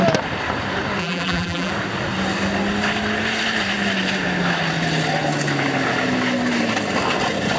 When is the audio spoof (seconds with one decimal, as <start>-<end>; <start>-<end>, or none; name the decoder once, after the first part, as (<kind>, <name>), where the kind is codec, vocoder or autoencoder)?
1.0-1.7 (vocoder, BigVGAN v2)